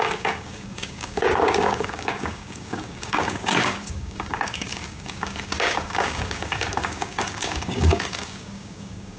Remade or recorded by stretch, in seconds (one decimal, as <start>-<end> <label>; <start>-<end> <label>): 0.0-9.2 remade